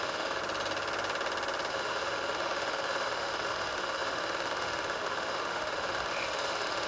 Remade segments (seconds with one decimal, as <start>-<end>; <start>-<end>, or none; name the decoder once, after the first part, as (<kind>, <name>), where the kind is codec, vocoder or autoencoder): 0.0-0.4 (autoencoder, DAC-VAE); 1.7-6.9